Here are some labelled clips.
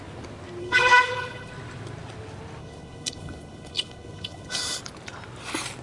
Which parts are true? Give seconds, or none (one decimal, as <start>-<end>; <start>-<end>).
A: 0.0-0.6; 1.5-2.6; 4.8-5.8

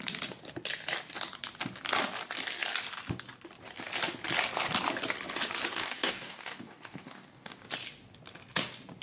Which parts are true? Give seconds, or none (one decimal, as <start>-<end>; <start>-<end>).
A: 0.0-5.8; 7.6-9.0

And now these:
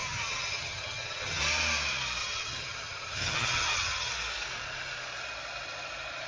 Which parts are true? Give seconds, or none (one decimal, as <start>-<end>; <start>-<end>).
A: 1.4-2.2; 4.1-6.3